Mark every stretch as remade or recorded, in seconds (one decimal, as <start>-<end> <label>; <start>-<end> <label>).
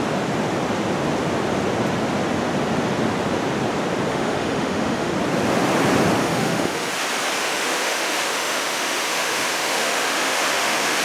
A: 0.0-4.1 recorded; 4.1-5.1 remade; 5.1-6.2 recorded; 6.2-6.9 remade; 6.9-7.4 recorded; 7.4-11.0 remade